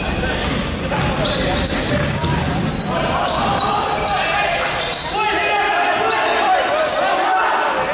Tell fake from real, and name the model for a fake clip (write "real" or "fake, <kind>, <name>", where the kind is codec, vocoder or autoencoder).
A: real